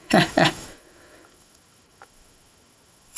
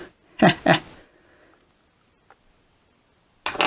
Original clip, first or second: second